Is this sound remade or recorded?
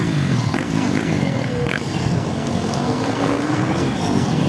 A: remade